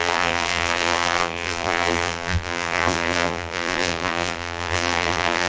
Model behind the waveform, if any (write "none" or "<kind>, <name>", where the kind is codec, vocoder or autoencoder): vocoder, BigVGAN v2